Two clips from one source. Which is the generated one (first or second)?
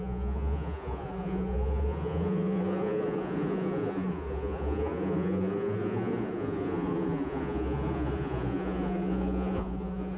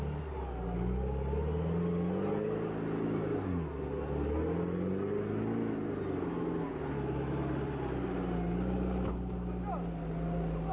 first